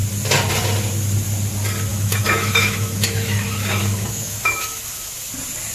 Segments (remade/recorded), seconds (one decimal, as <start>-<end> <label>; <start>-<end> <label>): 0.0-1.9 recorded; 1.9-5.3 remade; 5.3-5.7 recorded